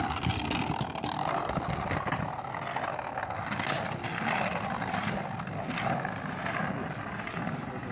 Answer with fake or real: real